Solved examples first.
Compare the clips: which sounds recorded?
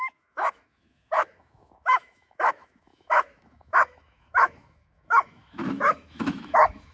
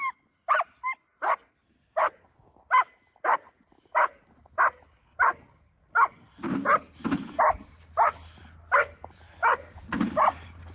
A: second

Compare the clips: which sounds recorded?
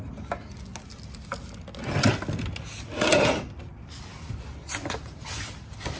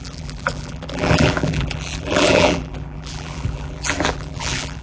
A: first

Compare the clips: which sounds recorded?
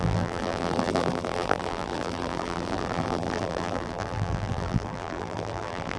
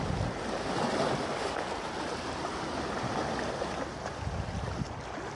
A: second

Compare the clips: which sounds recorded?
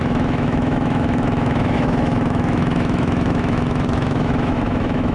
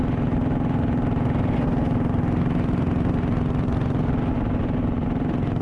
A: second